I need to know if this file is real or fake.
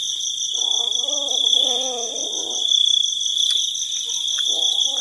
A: real